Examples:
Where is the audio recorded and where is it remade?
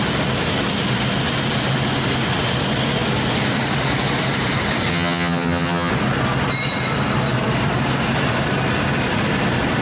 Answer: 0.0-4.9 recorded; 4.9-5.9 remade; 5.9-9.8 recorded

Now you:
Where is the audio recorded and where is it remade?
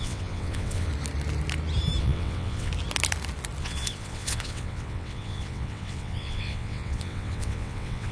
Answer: 0.0-0.9 remade; 0.9-2.0 recorded; 2.0-2.7 remade; 2.7-3.6 recorded; 3.6-8.1 remade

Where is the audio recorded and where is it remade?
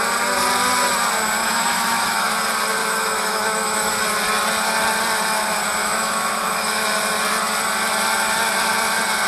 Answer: 0.0-1.4 recorded; 1.4-2.3 remade; 2.3-2.8 recorded; 2.8-3.9 remade; 3.9-5.8 recorded; 5.8-7.0 remade; 7.0-9.3 recorded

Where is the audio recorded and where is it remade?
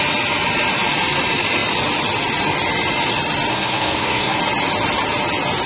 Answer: 0.0-3.5 recorded; 3.5-4.4 remade; 4.4-5.7 recorded